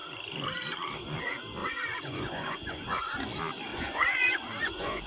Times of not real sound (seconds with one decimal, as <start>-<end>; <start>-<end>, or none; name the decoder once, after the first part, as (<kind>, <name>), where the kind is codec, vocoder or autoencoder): 1.6-3.2 (vocoder, Vocos); 3.7-5.1